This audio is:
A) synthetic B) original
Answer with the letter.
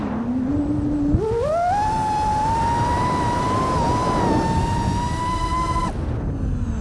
B